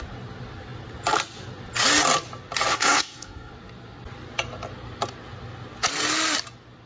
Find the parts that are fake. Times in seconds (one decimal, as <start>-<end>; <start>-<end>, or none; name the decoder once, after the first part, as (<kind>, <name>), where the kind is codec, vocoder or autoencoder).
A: 2.7-3.5 (codec, SNAC)